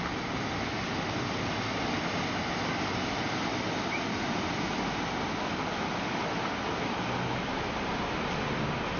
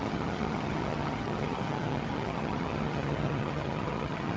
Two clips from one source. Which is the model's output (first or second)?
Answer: second